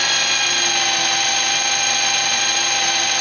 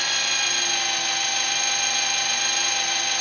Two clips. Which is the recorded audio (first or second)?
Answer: second